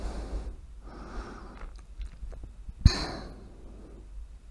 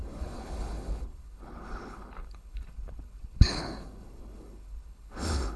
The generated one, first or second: second